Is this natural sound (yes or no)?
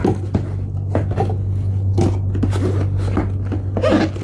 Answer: yes